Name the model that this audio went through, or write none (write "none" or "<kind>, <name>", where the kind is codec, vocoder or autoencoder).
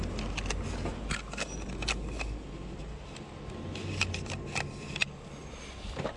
none